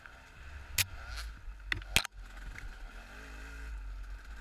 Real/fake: real